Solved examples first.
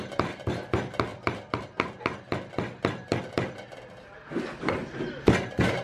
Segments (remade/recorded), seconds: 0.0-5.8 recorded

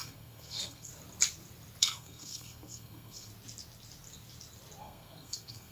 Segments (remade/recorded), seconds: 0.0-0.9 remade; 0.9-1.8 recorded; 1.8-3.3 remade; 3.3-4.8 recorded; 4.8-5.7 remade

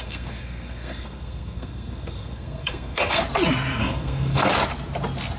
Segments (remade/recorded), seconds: 0.0-3.2 remade; 3.2-3.8 recorded; 3.8-4.5 remade; 4.5-5.4 recorded